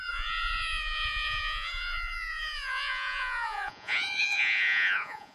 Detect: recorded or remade remade